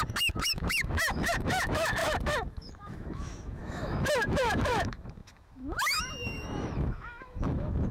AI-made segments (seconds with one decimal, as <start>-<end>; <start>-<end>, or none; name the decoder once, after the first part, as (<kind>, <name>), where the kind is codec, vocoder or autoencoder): 0.0-7.9 (autoencoder, DAC-VAE)